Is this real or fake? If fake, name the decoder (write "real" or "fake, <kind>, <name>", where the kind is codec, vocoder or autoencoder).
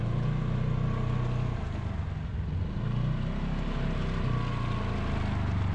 real